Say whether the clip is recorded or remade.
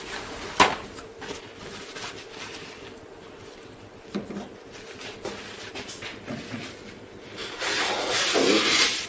recorded